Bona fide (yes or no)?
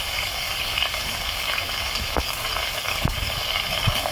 no